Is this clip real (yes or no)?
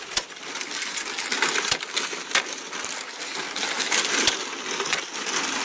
yes